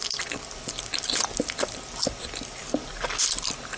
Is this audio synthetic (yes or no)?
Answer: no